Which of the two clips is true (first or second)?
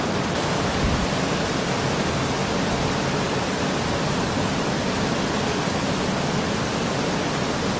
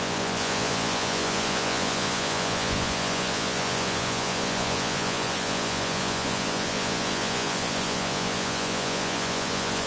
first